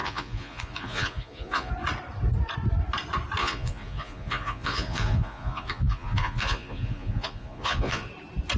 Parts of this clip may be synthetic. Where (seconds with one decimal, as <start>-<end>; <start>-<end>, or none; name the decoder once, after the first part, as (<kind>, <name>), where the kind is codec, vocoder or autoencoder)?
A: 0.0-1.7 (vocoder, Vocos); 3.4-8.1